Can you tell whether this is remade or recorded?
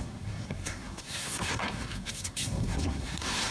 remade